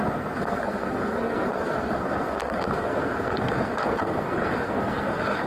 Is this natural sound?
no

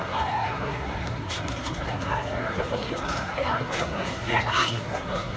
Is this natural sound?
no